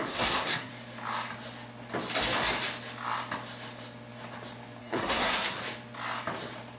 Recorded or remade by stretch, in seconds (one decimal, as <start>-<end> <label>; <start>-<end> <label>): 0.0-0.7 remade; 0.7-4.8 recorded; 4.8-5.6 remade; 5.6-6.8 recorded